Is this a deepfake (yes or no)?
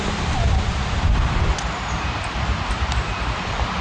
yes